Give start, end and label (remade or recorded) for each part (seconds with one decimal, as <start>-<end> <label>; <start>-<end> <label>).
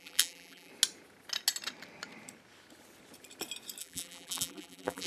0.0-0.7 remade; 0.7-3.8 recorded; 3.8-5.1 remade